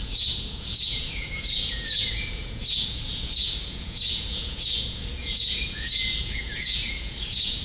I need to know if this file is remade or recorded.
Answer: remade